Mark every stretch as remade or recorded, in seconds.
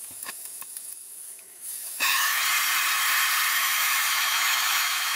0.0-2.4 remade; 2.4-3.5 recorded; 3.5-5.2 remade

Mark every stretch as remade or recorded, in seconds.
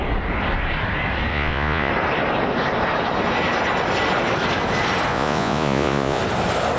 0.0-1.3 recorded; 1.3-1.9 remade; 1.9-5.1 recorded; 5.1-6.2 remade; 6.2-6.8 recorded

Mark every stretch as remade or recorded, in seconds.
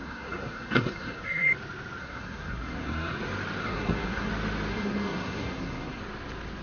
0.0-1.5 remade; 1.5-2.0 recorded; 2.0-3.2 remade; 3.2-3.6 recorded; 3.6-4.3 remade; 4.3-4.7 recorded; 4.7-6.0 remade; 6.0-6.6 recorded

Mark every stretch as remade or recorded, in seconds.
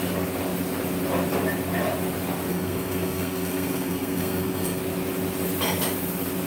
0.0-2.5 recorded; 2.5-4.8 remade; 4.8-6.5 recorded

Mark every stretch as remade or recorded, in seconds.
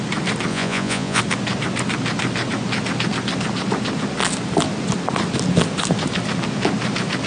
0.0-0.5 recorded; 0.5-1.2 remade; 1.2-7.3 recorded